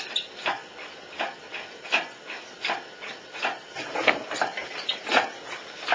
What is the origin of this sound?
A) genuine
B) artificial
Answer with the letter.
A